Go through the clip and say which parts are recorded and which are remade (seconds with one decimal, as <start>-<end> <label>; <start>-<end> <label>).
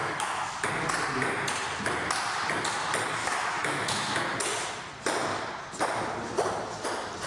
0.0-0.7 remade; 0.7-3.2 recorded; 3.2-4.2 remade; 4.2-7.3 recorded